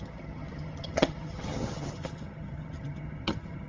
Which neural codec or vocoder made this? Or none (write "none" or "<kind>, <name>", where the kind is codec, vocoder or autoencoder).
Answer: vocoder, HiFi-GAN